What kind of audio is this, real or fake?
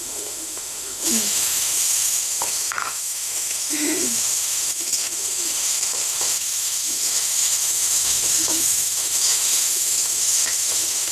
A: fake